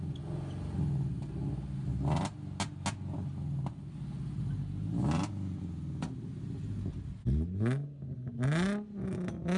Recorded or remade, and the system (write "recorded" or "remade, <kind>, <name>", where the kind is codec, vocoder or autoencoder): recorded